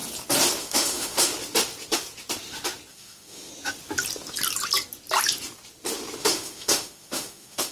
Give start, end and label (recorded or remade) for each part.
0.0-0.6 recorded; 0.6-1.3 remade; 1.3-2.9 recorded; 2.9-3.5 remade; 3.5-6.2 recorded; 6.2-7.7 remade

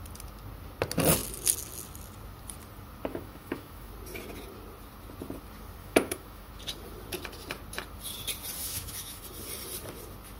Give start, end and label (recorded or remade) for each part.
0.0-3.1 recorded; 3.1-3.9 remade; 3.9-5.8 recorded; 5.8-6.5 remade; 6.5-8.6 recorded; 8.6-9.2 remade; 9.2-10.4 recorded

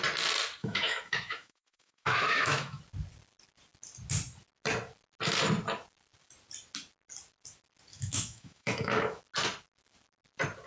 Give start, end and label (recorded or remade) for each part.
0.0-0.6 recorded; 0.6-2.8 remade; 2.8-7.9 recorded; 7.9-9.2 remade; 9.2-10.7 recorded

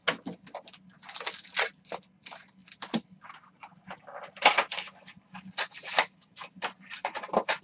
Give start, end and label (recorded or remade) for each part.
0.0-7.6 recorded